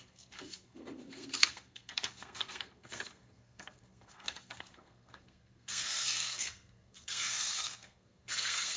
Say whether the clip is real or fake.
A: fake